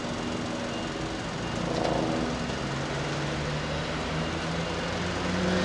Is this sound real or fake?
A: real